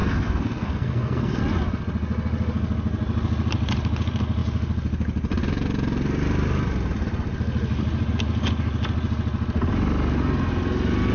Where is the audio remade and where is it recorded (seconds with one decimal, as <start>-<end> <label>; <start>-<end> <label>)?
0.0-1.4 remade; 1.4-11.1 recorded